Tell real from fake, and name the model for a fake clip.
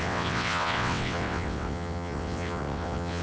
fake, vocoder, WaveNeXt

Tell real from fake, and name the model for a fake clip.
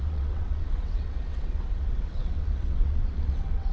fake, vocoder, WaveNeXt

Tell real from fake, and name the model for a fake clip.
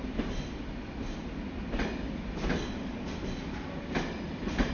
real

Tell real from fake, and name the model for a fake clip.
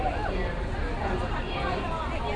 real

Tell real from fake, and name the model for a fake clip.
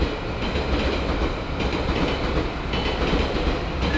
real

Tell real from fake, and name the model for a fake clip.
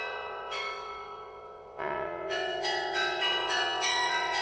fake, vocoder, WaveNeXt